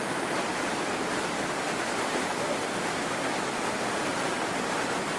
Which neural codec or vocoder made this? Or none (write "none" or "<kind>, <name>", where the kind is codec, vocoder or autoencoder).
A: none